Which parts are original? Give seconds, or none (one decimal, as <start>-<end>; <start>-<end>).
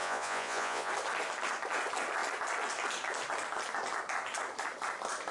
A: 0.9-5.3